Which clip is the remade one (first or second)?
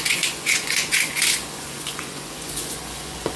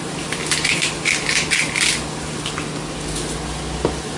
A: first